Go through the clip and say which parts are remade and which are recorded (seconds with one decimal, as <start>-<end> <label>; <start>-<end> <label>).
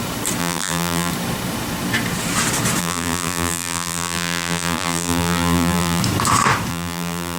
0.0-0.4 recorded; 0.4-1.1 remade; 1.1-2.8 recorded; 2.8-6.0 remade; 6.0-6.7 recorded; 6.7-7.4 remade